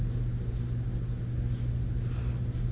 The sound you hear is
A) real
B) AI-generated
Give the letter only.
A